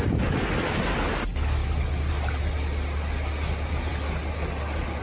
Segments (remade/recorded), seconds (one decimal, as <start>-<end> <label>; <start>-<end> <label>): 0.0-5.0 recorded